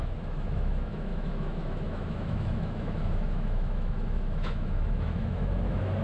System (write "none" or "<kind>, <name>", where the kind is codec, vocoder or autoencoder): autoencoder, DAC-VAE